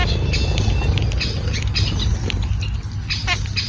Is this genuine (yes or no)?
yes